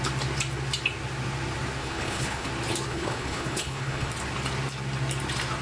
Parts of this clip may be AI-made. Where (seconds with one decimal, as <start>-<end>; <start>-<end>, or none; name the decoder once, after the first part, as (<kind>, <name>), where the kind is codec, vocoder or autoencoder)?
1.8-2.5 (codec, HILCodec); 2.9-4.1